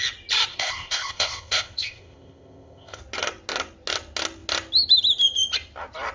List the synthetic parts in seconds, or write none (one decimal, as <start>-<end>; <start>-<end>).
0.5-3.0